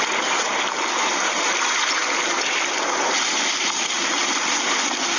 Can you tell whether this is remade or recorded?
recorded